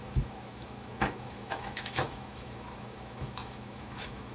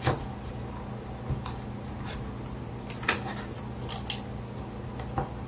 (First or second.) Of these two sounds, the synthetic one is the first